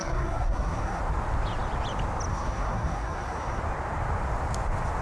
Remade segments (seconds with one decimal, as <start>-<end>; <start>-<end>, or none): 0.0-1.0; 2.3-3.6